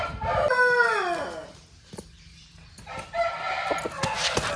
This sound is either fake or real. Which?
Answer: real